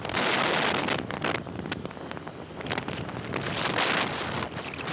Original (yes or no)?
yes